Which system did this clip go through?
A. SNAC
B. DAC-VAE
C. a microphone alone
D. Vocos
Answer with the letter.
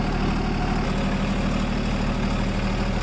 C